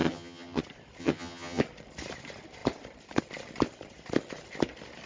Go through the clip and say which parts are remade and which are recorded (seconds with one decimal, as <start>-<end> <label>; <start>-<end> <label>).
0.0-0.6 remade; 0.6-1.0 recorded; 1.0-1.6 remade; 1.6-5.1 recorded